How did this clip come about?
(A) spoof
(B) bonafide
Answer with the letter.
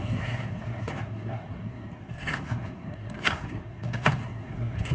A